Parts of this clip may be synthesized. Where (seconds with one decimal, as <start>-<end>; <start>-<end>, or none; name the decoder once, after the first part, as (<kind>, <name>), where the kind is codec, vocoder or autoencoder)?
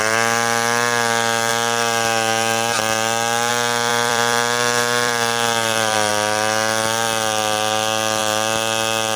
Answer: 3.9-6.1 (vocoder, BigVGAN v2)